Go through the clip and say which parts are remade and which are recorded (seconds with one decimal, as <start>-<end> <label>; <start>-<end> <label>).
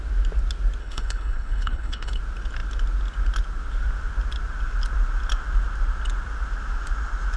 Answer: 0.0-0.8 recorded; 0.8-2.2 remade; 2.2-7.4 recorded